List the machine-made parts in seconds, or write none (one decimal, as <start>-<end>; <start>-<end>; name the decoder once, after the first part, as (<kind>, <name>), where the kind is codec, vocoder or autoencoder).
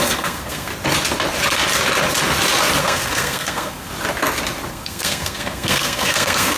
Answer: 0.0-0.7 (codec, SNAC); 2.8-3.9; 4.7-6.6